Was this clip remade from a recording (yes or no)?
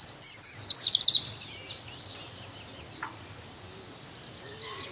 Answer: no